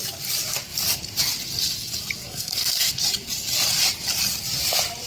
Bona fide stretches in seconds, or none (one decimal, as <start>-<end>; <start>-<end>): 0.0-2.2; 2.9-5.1